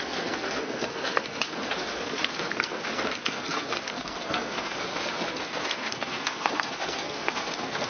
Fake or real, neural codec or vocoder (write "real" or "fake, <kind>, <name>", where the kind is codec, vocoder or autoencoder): fake, codec, SNAC